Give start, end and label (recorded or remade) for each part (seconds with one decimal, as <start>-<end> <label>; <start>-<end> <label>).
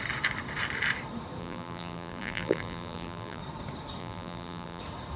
0.0-1.4 recorded; 1.4-3.4 remade; 3.4-4.0 recorded; 4.0-4.8 remade; 4.8-5.2 recorded